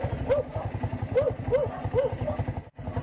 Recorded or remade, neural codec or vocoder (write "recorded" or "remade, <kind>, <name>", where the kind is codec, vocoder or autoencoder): recorded